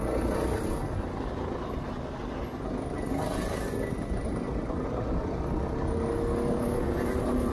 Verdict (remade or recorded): recorded